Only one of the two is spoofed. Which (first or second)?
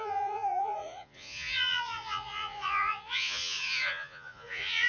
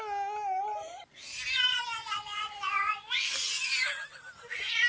first